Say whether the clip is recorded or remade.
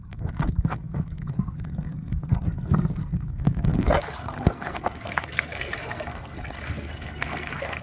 remade